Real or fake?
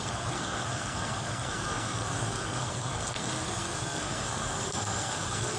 fake